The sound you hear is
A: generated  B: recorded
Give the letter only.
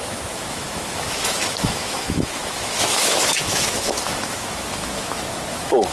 A